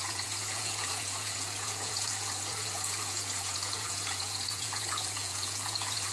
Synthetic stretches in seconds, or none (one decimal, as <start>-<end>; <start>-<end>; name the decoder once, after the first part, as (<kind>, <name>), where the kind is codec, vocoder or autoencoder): 0.0-6.1 (vocoder, Vocos)